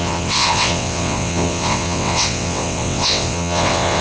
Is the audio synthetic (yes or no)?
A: yes